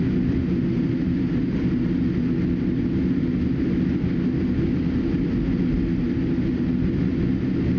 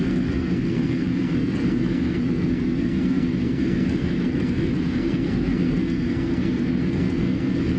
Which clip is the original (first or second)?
first